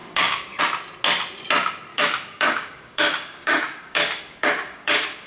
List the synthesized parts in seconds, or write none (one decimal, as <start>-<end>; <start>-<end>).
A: 0.0-0.6; 1.9-5.3